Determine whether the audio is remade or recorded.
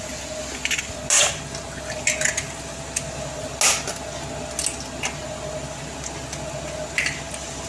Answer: recorded